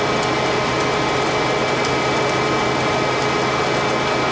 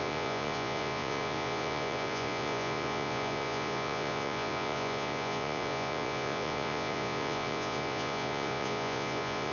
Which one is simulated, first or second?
second